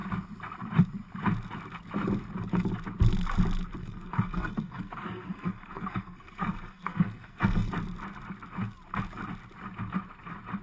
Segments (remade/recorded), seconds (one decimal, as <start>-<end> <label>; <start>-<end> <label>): 0.0-3.8 recorded; 3.8-7.7 remade; 7.7-10.6 recorded